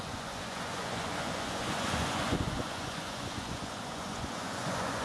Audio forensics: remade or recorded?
remade